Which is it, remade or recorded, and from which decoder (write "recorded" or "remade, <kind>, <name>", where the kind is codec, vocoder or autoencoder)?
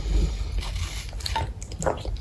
recorded